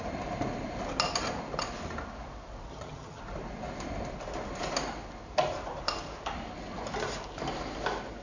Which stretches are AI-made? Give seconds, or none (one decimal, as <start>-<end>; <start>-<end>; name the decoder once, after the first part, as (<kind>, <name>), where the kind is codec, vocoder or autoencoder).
2.7-3.2 (vocoder, HiFi-GAN)

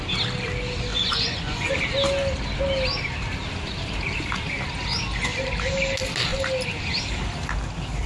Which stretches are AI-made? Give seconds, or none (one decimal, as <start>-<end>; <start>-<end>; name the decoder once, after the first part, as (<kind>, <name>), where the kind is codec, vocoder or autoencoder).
0.9-1.7 (vocoder, Vocos)

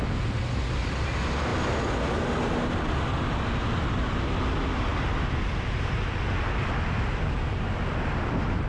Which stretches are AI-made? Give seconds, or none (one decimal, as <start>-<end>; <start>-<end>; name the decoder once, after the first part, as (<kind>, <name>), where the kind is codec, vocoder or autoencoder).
none

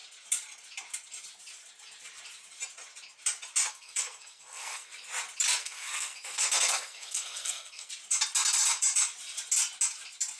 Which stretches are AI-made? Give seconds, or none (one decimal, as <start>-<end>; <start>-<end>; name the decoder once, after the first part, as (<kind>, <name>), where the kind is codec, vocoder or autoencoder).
3.7-4.9 (codec, SNAC); 5.6-7.9

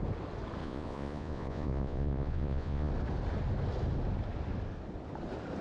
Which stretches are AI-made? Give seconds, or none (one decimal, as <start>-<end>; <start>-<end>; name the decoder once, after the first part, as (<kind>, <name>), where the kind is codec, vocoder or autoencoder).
0.6-2.9 (vocoder, Vocos)

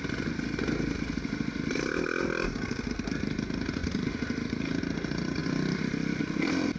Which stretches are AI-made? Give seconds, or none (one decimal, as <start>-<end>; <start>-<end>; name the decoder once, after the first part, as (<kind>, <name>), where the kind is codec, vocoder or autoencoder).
none